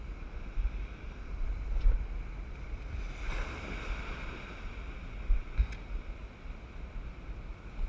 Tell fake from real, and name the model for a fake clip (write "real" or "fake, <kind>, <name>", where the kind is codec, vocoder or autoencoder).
real